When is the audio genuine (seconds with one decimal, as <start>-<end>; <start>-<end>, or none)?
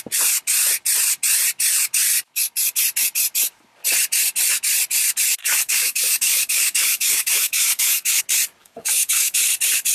0.0-5.4; 8.2-8.6; 9.5-9.9